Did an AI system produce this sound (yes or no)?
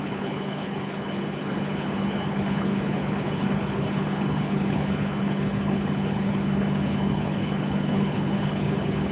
yes